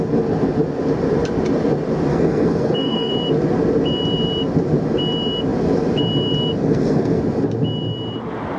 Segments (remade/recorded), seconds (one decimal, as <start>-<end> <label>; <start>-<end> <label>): 0.0-2.1 recorded; 2.1-3.1 remade; 3.1-6.6 recorded; 6.6-7.2 remade; 7.2-8.6 recorded